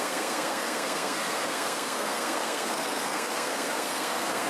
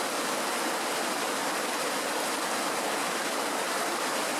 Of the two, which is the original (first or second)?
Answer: second